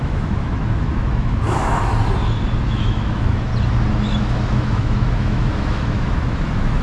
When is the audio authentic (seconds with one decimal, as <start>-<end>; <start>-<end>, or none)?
1.9-2.6; 3.5-4.2

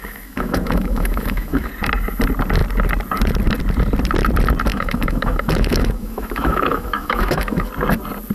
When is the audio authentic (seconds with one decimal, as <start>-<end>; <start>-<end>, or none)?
1.7-4.7; 7.7-8.3

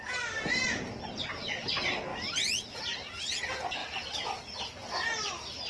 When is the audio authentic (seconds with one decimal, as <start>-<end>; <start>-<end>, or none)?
0.0-5.7

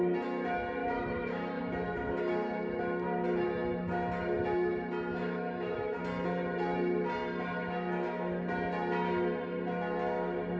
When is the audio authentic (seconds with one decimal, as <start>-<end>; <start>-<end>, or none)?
0.0-0.8; 1.6-5.1; 6.0-10.6

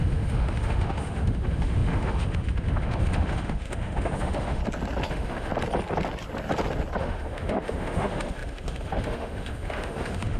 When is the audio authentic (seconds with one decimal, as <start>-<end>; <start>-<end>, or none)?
4.6-5.1; 5.5-7.0